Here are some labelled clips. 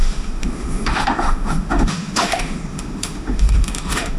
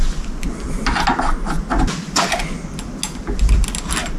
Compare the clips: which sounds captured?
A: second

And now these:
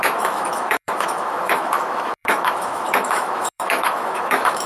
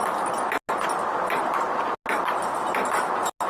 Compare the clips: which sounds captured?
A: second